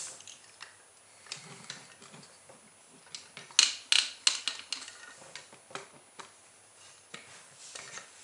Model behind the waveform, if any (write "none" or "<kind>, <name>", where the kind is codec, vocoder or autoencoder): none